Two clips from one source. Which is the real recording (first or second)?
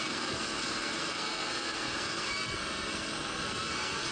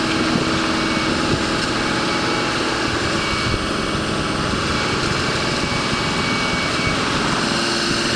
second